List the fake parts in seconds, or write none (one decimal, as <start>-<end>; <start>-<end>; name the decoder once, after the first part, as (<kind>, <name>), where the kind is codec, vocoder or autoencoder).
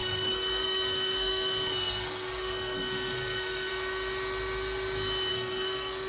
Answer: 0.0-3.7 (codec, SNAC); 5.3-6.1